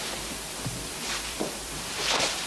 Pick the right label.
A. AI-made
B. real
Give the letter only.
A